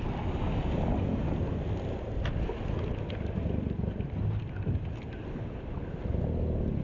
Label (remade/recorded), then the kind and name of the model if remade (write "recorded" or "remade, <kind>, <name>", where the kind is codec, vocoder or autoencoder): recorded